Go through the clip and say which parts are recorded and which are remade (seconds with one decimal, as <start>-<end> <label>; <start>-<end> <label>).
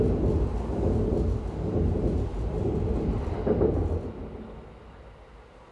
0.0-2.3 recorded; 2.3-4.0 remade; 4.0-5.7 recorded